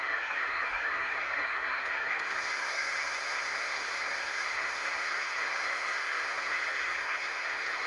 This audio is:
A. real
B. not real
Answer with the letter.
B